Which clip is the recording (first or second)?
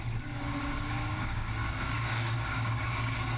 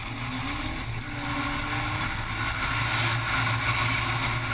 second